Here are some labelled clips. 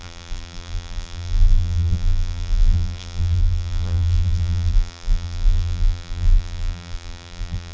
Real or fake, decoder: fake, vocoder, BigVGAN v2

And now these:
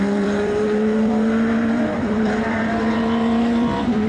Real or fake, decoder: fake, vocoder, BigVGAN v2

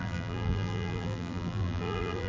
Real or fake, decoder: fake, vocoder, BigVGAN v2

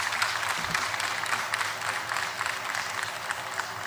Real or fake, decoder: real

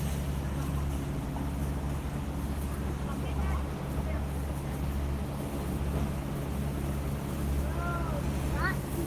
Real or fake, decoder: real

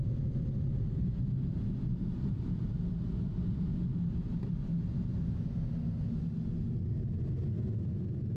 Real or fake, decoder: real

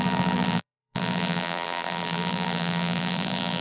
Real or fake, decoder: fake, vocoder, BigVGAN v2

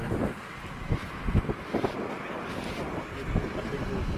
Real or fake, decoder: real